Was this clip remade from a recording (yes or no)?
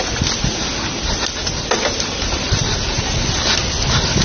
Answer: no